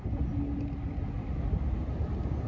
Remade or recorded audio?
recorded